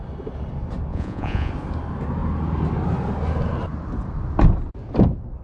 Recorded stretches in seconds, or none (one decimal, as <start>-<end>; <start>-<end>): 0.0-0.9; 1.5-5.4